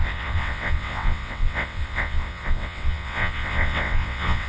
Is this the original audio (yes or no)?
no